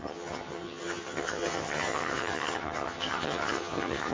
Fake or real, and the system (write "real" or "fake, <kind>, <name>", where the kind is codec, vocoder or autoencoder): fake, vocoder, HiFi-GAN